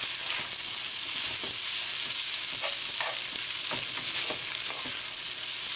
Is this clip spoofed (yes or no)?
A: no